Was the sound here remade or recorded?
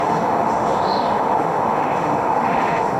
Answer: remade